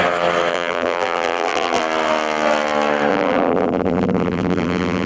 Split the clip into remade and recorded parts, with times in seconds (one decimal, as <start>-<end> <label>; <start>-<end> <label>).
0.0-0.5 recorded; 0.5-1.8 remade; 1.8-3.1 recorded; 3.1-5.1 remade